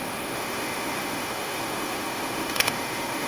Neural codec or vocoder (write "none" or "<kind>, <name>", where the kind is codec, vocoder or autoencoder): autoencoder, DAC-VAE